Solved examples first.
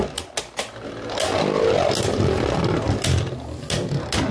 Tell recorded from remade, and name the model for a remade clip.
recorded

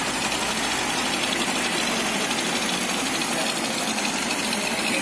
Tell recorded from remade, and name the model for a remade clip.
recorded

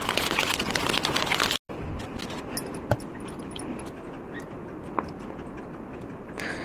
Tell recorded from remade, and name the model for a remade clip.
recorded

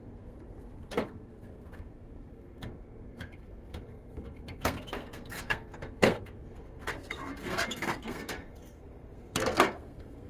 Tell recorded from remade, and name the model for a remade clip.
remade, codec, SNAC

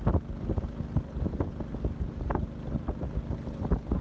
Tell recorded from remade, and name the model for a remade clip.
recorded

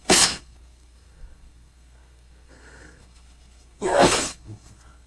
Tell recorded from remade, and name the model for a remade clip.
remade, codec, SNAC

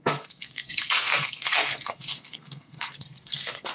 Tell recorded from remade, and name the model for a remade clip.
remade, codec, SNAC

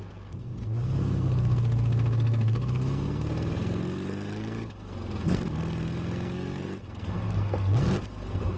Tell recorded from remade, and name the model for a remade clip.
remade, codec, SNAC